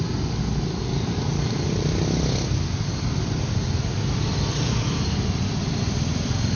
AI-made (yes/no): no